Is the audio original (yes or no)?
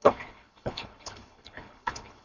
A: no